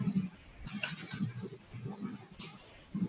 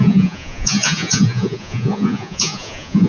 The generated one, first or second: second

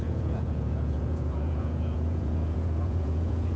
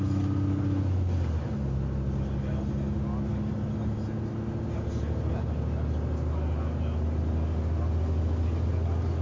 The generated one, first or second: first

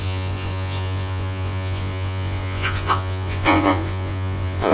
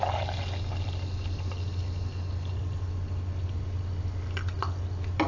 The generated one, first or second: first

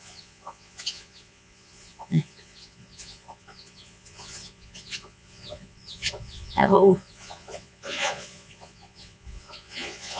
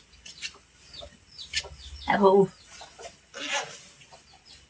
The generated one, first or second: first